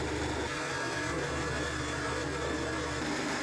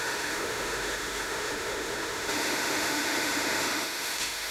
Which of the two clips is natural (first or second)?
first